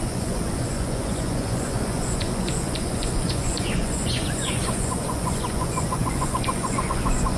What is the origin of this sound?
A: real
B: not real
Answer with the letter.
B